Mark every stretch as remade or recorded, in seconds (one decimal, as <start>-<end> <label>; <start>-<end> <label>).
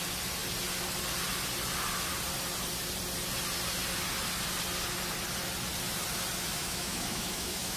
0.0-6.6 recorded; 6.6-7.8 remade